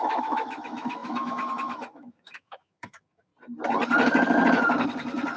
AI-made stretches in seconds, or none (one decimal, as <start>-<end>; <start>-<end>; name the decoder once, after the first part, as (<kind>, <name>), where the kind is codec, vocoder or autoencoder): 0.0-3.3 (autoencoder, DAC-VAE)